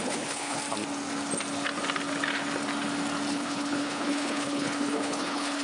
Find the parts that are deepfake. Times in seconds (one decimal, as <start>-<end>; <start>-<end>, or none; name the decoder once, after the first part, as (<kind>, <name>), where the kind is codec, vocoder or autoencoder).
0.0-0.6 (codec, HILCodec); 3.3-5.6

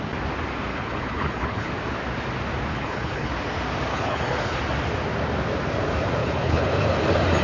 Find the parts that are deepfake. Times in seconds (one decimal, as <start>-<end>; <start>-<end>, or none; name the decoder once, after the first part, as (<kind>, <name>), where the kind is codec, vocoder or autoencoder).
0.7-1.7 (codec, HILCodec); 2.7-3.3; 3.9-4.6; 6.2-6.7

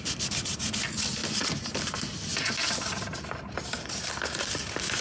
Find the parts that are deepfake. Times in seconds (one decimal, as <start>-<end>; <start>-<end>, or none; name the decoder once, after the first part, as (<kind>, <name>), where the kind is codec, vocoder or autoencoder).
none

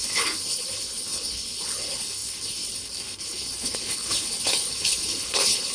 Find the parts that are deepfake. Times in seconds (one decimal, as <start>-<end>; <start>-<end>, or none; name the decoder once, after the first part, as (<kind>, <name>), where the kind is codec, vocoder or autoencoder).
0.0-5.7 (codec, HILCodec)

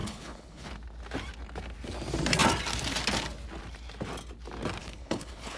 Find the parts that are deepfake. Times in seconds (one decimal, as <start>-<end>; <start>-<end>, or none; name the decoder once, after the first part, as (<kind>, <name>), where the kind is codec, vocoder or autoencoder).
0.0-0.7 (codec, HILCodec); 4.8-5.6

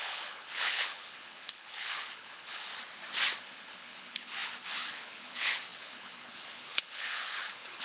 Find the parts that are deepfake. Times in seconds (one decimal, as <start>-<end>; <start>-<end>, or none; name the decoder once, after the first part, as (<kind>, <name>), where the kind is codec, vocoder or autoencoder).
0.0-2.7 (codec, HILCodec); 3.4-7.8

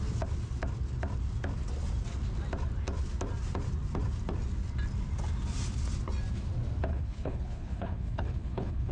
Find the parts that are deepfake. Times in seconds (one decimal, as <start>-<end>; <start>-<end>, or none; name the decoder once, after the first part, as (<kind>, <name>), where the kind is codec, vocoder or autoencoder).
6.9-8.9 (codec, HILCodec)